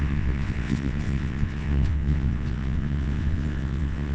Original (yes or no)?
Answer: no